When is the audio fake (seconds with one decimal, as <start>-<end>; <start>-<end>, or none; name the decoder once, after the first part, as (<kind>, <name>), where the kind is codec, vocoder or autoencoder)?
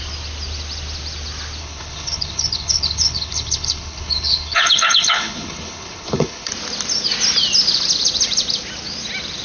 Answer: 1.6-6.5 (codec, HILCodec)